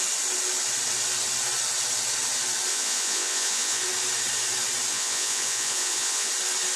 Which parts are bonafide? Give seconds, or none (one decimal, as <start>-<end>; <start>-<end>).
0.0-2.7; 3.8-4.9; 6.3-6.8